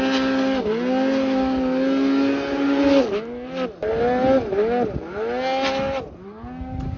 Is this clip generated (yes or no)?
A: no